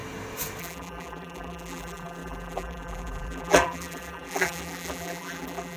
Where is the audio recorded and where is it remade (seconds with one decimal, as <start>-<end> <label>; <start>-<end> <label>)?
0.0-0.6 recorded; 0.6-5.8 remade